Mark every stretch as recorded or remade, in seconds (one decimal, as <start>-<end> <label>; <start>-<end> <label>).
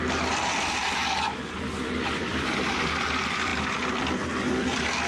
0.0-1.0 remade; 1.0-1.8 recorded; 1.8-5.1 remade